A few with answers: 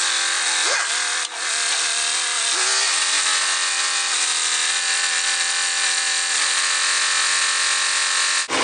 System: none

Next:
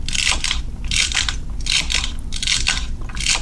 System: none